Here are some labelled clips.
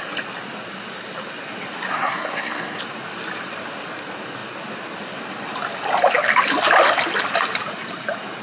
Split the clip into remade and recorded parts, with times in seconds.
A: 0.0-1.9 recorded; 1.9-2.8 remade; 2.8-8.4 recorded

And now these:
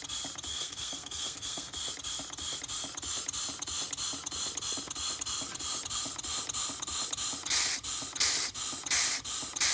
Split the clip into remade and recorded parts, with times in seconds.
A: 0.0-0.5 recorded; 0.5-1.7 remade; 1.7-9.7 recorded

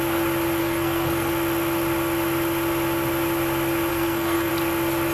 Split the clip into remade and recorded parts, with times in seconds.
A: 0.0-0.6 recorded; 0.6-1.3 remade; 1.3-3.9 recorded; 3.9-4.5 remade; 4.5-5.1 recorded

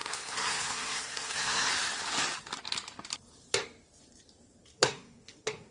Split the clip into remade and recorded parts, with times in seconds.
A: 0.0-1.7 remade; 1.7-4.7 recorded; 4.7-5.7 remade

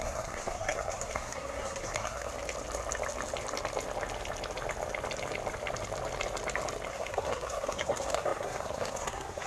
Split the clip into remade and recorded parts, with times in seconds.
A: 0.0-2.3 remade; 2.3-6.9 recorded; 6.9-9.5 remade

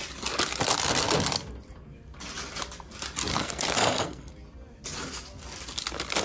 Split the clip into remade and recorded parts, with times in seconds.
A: 0.0-3.3 recorded; 3.3-4.3 remade; 4.3-6.2 recorded